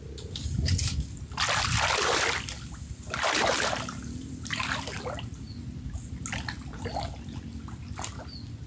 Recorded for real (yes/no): yes